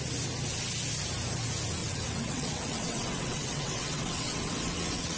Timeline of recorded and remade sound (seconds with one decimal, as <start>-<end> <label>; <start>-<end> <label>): 0.0-1.8 recorded; 1.8-5.2 remade